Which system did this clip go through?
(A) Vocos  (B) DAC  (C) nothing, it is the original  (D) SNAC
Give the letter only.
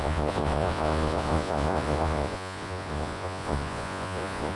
A